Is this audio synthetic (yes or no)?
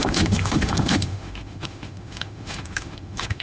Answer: yes